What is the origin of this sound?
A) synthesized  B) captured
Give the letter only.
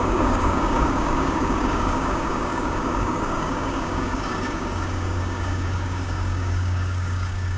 A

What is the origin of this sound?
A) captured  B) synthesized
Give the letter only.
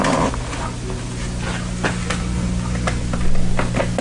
A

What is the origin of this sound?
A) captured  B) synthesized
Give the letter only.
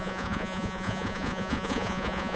B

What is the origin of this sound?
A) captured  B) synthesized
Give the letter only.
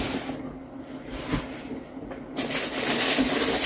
A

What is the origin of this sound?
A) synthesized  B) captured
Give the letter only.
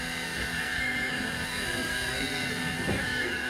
A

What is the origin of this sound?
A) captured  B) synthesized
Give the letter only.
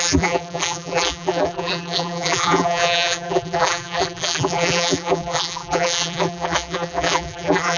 B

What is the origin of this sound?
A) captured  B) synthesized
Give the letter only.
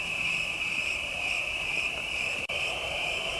B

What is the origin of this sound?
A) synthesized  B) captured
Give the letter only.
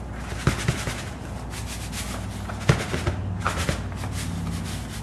B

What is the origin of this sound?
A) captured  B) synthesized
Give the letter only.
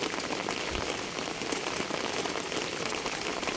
A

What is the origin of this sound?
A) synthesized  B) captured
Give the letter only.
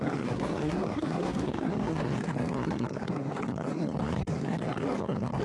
A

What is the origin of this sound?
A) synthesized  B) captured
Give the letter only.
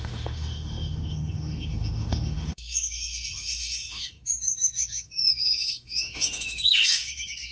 A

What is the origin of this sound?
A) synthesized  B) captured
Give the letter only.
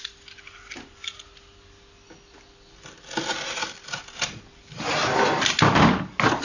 B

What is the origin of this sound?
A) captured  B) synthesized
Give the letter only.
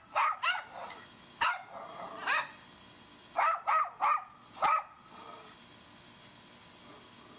A